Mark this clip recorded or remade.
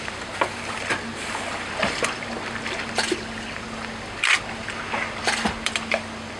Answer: recorded